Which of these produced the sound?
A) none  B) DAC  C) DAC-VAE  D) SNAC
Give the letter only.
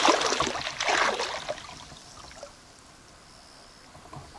A